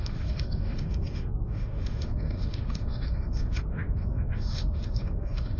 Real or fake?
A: fake